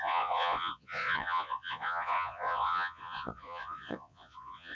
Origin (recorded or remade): remade